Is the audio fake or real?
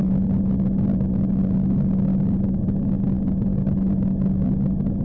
real